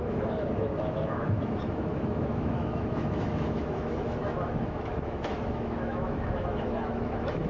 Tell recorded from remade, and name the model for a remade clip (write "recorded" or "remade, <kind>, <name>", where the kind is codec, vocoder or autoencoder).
remade, autoencoder, DAC-VAE